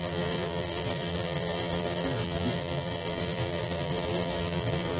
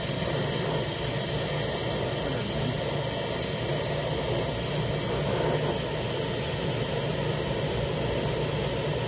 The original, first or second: second